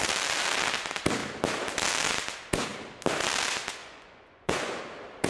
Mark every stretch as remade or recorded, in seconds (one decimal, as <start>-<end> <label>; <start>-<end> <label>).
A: 0.0-3.8 recorded; 3.8-4.8 remade; 4.8-5.3 recorded